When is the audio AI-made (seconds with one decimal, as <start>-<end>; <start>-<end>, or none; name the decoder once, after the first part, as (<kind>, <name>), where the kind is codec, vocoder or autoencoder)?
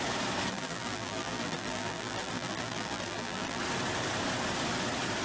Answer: 0.5-3.6 (vocoder, BigVGAN v2)